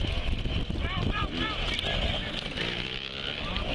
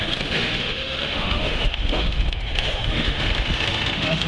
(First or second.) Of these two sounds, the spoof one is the second